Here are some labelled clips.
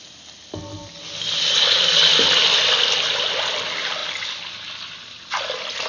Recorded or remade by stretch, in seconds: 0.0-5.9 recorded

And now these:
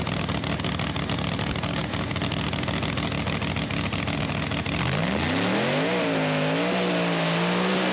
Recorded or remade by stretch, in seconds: 0.0-7.9 recorded

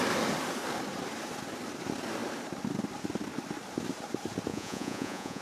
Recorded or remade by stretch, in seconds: 0.0-4.5 recorded; 4.5-5.4 remade

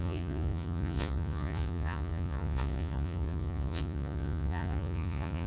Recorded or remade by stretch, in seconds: 0.0-5.5 remade

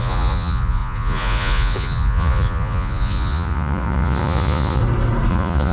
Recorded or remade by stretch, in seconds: 0.0-4.8 remade; 4.8-5.3 recorded; 5.3-5.7 remade

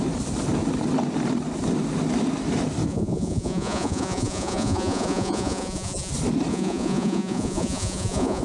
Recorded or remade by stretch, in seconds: 0.0-2.9 recorded; 2.9-6.1 remade; 6.1-6.5 recorded; 6.5-8.4 remade